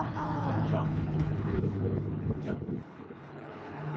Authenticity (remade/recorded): remade